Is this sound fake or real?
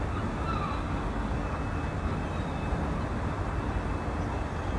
real